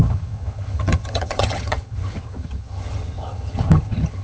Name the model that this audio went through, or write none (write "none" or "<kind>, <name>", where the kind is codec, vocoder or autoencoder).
vocoder, HiFi-GAN